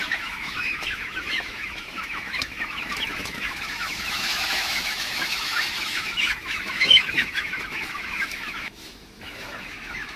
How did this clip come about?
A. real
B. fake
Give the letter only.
B